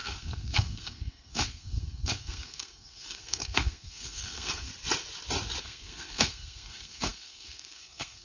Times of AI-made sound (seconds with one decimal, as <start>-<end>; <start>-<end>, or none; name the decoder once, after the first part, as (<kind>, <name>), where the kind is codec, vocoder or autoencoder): 0.0-4.7 (codec, SNAC); 5.6-8.2